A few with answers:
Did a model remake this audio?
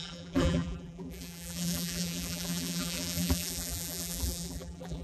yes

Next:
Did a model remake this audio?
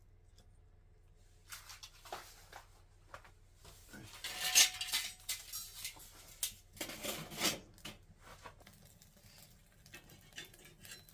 no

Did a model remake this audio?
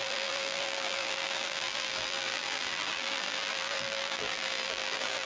yes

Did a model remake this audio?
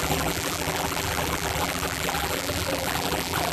yes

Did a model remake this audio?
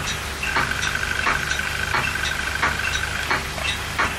no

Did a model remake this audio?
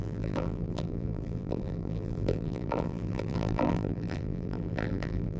yes